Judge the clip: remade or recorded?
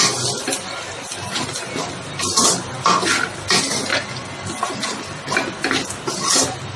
recorded